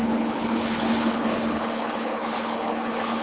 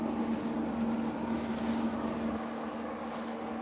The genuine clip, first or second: second